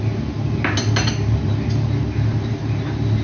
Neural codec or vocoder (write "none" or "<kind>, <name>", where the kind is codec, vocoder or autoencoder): none